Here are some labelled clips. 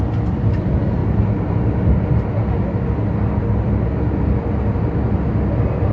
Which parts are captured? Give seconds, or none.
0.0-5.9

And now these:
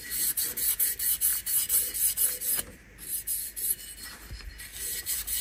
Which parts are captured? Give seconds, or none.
0.0-5.4

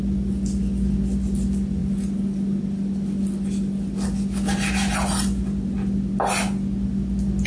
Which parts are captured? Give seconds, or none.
0.0-7.5

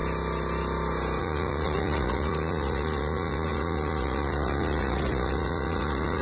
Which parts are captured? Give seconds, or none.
0.0-1.2

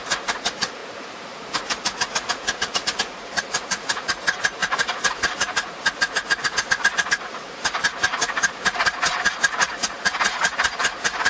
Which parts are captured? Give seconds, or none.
none

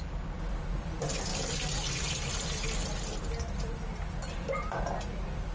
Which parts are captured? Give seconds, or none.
0.0-5.5